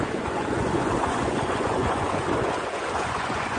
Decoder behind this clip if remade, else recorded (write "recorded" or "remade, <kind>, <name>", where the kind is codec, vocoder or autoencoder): remade, vocoder, Vocos